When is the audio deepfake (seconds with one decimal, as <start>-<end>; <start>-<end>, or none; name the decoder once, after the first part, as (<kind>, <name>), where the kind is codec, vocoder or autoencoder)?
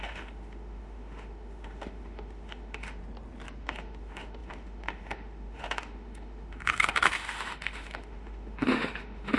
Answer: 0.0-3.0 (autoencoder, DAC-VAE); 3.6-9.4